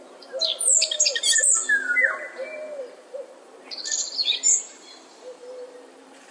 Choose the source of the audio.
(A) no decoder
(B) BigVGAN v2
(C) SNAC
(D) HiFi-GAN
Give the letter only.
B